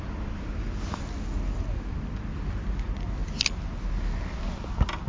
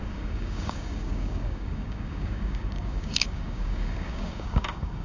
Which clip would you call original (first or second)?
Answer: first